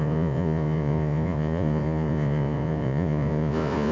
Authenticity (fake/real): fake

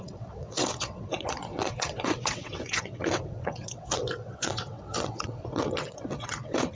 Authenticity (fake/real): fake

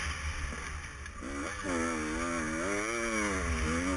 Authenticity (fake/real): real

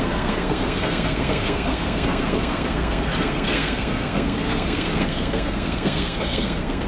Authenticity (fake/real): fake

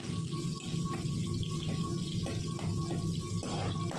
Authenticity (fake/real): real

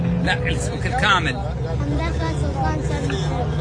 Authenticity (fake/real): real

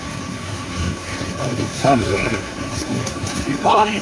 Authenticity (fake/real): fake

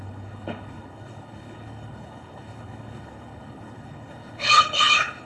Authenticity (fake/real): fake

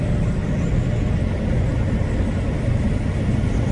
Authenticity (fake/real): real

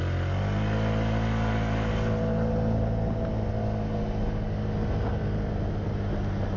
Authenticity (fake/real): real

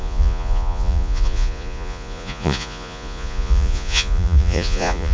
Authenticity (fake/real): fake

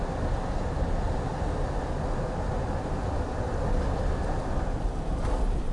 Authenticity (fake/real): real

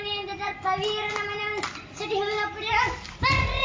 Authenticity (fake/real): real